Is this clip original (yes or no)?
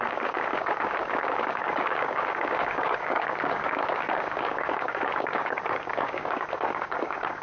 no